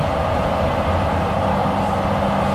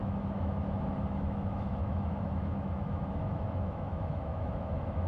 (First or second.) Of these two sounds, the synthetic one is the second